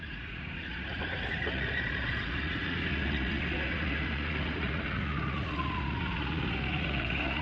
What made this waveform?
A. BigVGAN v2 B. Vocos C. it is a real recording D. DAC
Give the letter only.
B